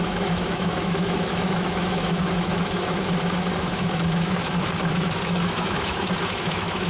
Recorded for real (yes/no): no